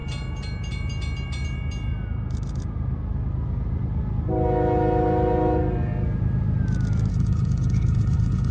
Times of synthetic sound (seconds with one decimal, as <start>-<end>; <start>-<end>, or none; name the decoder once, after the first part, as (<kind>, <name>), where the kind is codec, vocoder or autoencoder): 7.1-8.5 (codec, HILCodec)